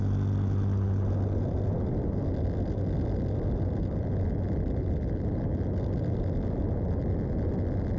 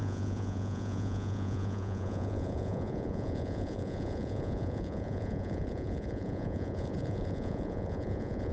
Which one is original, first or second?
first